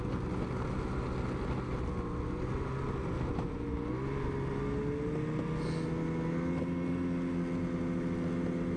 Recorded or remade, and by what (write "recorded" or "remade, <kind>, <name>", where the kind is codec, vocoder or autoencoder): recorded